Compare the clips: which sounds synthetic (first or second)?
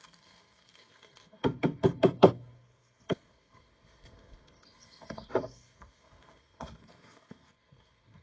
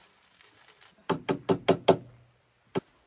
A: first